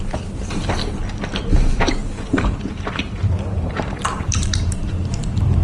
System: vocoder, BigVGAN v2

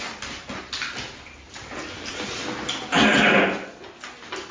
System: none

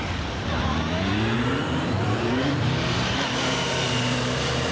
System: vocoder, BigVGAN v2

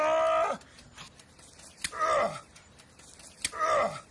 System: none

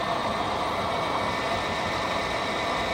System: vocoder, BigVGAN v2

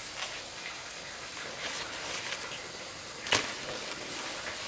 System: none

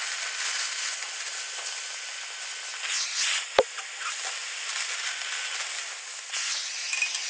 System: none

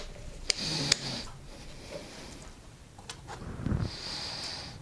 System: vocoder, BigVGAN v2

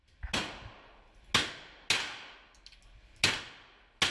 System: none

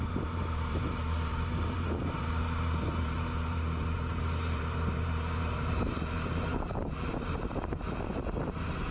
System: vocoder, BigVGAN v2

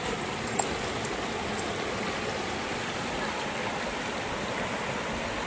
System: none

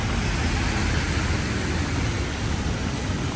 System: none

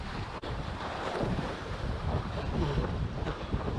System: vocoder, BigVGAN v2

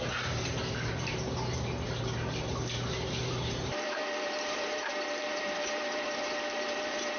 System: vocoder, BigVGAN v2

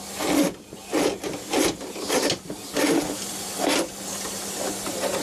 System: none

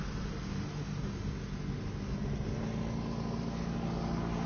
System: none